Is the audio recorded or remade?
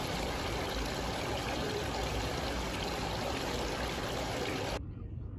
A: recorded